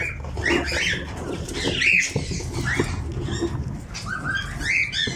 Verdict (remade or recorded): recorded